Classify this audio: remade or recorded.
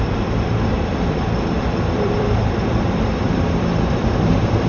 remade